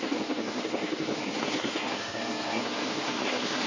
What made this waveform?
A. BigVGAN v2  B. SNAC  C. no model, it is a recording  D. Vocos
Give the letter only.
B